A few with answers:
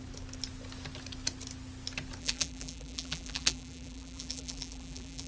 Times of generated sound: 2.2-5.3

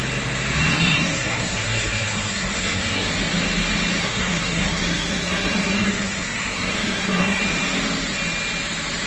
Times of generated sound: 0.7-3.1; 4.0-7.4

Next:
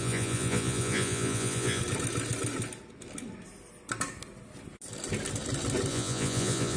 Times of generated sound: 0.0-1.8; 5.9-6.8

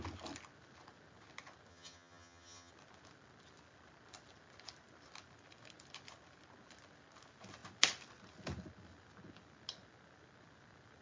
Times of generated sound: 1.7-2.7

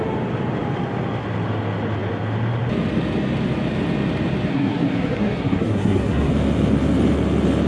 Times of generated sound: 4.5-6.3